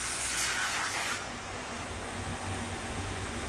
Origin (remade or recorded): remade